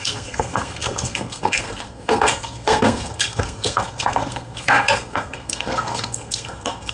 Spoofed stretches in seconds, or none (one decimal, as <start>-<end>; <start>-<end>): 0.0-6.9